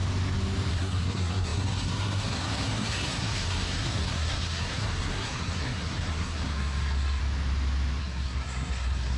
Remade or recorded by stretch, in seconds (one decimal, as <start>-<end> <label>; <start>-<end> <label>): 0.0-0.7 recorded; 0.7-7.2 remade; 7.2-8.0 recorded; 8.0-9.2 remade